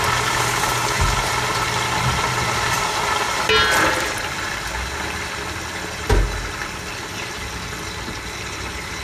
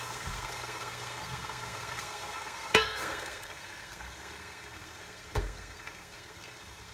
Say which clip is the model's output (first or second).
second